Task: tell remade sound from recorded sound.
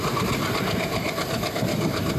recorded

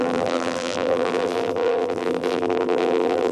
remade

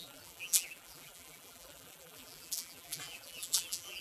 remade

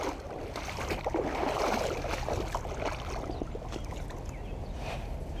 recorded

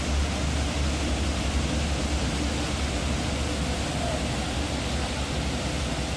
recorded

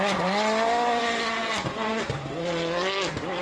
recorded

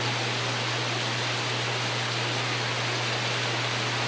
recorded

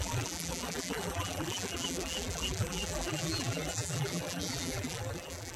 remade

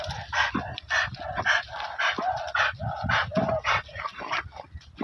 recorded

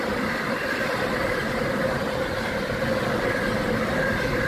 remade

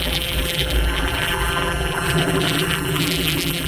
remade